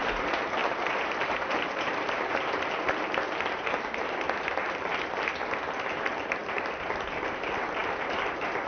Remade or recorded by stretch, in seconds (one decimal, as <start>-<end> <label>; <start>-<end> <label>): 0.0-0.6 recorded; 0.6-2.3 remade; 2.3-8.7 recorded